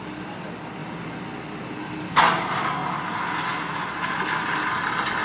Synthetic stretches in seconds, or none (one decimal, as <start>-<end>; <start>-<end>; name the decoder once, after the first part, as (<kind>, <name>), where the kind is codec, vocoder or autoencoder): none